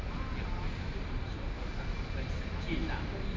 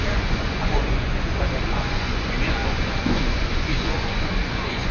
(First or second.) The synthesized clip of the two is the second